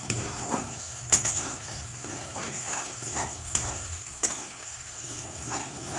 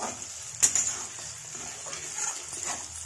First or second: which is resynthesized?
first